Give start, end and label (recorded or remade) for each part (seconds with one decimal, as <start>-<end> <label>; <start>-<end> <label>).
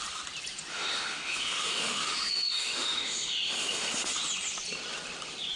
0.0-0.7 recorded; 0.7-4.1 remade; 4.1-5.6 recorded